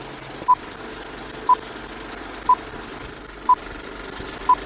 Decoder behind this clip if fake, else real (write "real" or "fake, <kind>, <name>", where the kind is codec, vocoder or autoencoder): real